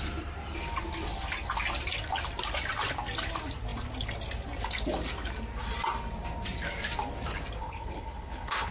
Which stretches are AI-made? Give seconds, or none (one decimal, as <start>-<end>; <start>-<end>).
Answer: 7.6-8.7